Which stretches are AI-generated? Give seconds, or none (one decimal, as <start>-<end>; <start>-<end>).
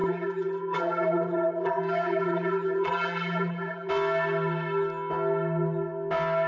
0.0-3.9